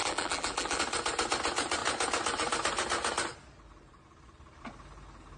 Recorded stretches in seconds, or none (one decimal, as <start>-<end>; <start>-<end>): 0.8-5.4